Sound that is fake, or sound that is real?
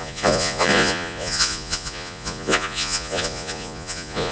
fake